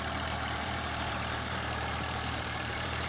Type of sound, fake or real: fake